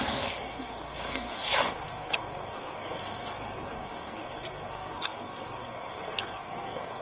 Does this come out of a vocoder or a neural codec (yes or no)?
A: yes